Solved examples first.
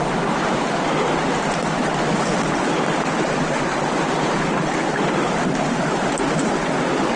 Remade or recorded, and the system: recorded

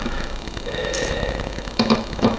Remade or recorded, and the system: remade, autoencoder, DAC-VAE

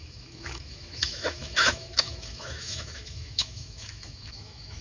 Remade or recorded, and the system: remade, autoencoder, DAC-VAE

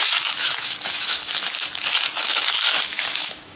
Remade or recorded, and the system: remade, autoencoder, DAC-VAE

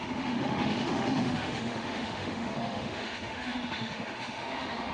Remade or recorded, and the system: remade, autoencoder, DAC-VAE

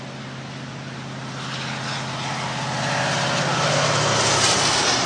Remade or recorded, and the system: recorded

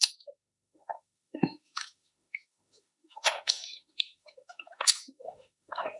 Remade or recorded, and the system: remade, autoencoder, DAC-VAE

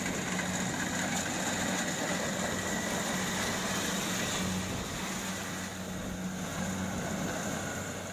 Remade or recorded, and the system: recorded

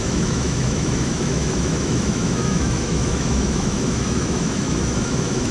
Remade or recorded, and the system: remade, autoencoder, DAC-VAE